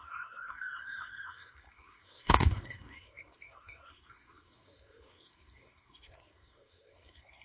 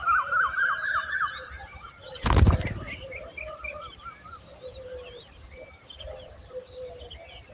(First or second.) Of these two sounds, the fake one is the first